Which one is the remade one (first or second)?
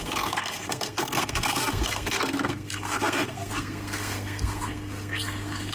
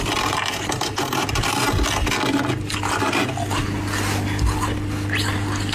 first